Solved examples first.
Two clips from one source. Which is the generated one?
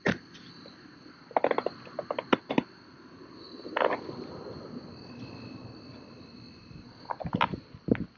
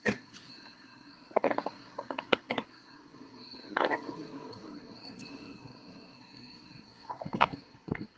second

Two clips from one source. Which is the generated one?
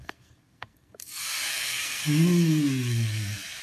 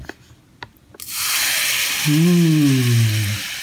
first